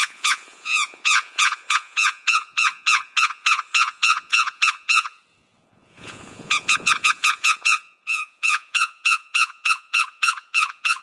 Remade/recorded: remade